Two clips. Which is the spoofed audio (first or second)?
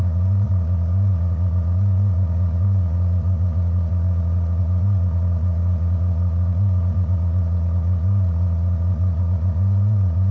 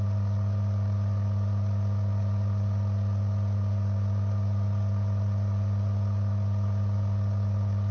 first